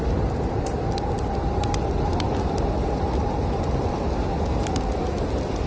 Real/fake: real